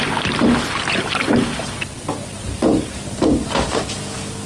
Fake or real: real